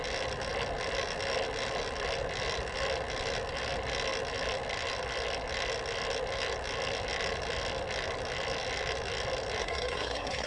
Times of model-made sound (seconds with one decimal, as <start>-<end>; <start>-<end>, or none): 9.6-10.5